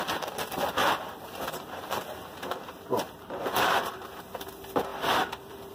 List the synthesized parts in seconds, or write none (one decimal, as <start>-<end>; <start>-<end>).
0.8-4.2